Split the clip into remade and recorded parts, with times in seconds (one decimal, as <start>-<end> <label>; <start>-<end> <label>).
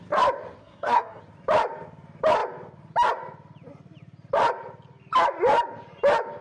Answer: 0.0-0.6 recorded; 0.6-1.2 remade; 1.2-6.4 recorded